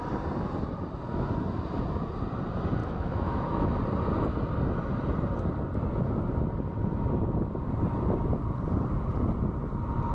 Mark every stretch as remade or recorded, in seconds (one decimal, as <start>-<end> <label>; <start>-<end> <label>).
0.0-2.8 recorded; 2.8-3.7 remade; 3.7-10.1 recorded